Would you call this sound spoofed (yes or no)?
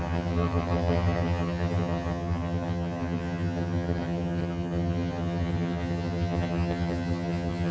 yes